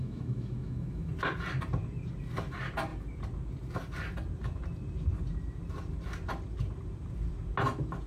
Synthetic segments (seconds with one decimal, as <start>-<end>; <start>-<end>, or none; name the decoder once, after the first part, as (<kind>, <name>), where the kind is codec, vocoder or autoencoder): 0.0-1.1 (autoencoder, DAC-VAE)